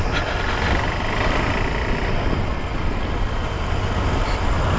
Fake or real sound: real